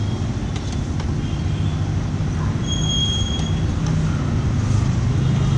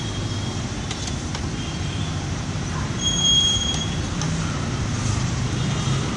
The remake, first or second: second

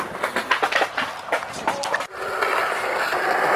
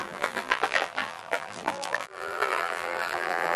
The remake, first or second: second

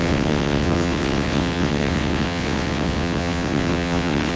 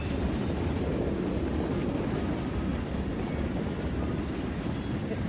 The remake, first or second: first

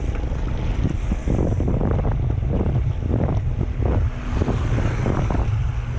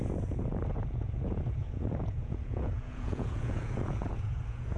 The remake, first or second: second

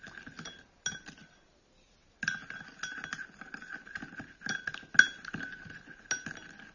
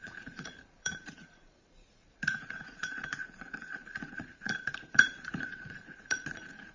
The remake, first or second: second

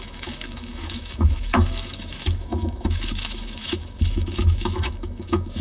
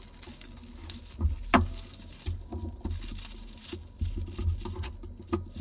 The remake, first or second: first